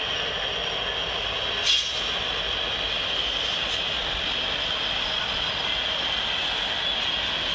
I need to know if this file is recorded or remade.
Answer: recorded